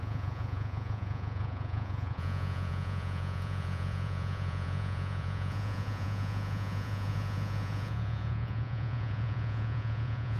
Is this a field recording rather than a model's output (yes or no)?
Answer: no